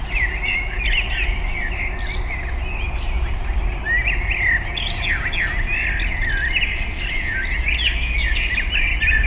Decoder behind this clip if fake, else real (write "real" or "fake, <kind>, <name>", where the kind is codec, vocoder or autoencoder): real